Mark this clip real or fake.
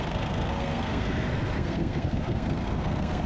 fake